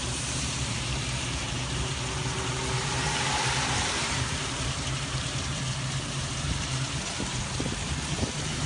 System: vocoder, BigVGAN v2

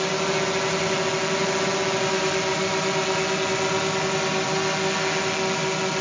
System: none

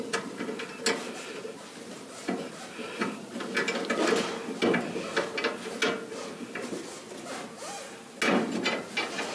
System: none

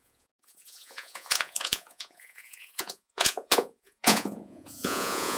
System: vocoder, Vocos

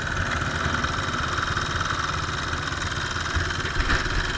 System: none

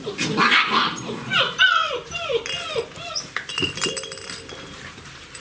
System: vocoder, BigVGAN v2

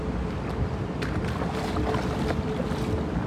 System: none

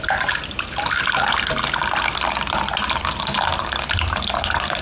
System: vocoder, BigVGAN v2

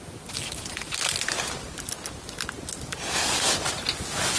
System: none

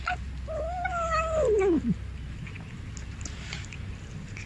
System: none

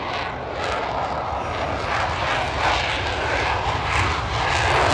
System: none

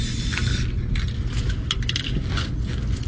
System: none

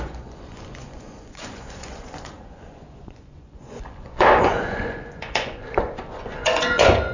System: vocoder, Vocos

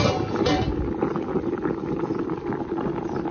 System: none